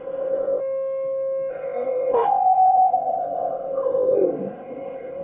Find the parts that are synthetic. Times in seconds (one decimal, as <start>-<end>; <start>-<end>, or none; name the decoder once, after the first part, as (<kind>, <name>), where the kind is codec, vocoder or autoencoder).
0.0-0.6 (codec, ZipCodec); 1.5-5.2